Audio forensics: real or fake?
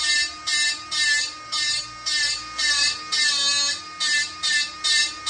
real